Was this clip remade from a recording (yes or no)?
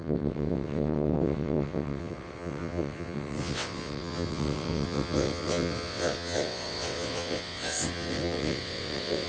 yes